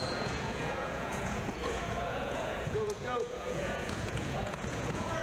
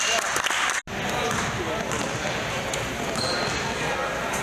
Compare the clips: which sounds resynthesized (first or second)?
first